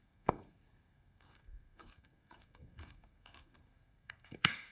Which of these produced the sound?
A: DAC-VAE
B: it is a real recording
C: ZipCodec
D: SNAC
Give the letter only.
D